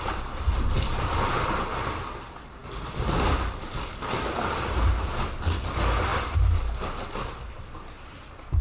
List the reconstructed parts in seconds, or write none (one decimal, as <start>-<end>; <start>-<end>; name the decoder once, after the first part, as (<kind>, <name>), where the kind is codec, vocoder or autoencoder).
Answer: none